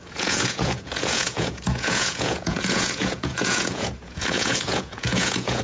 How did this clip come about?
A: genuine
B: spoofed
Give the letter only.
B